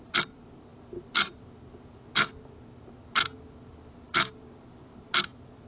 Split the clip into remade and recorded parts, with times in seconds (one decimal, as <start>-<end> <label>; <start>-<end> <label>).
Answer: 0.0-5.7 recorded